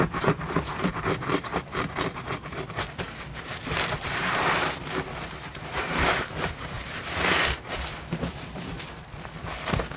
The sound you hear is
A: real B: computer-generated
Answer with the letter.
B